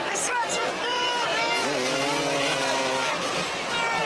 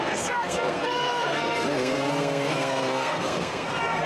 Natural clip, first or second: first